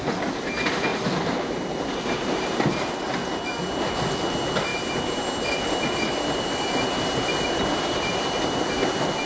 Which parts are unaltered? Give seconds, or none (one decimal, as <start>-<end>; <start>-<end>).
0.0-4.7; 8.7-9.3